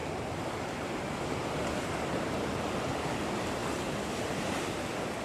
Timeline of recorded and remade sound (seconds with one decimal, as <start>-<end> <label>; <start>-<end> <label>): 0.0-3.6 recorded; 3.6-4.8 remade; 4.8-5.2 recorded